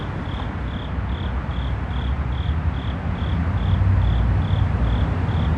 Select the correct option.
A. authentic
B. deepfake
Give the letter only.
A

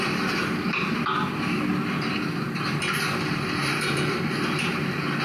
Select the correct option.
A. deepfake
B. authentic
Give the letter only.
B